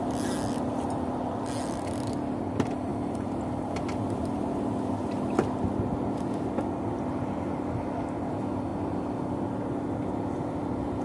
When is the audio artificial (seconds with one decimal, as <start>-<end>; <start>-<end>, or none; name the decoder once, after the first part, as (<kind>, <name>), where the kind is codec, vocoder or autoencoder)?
none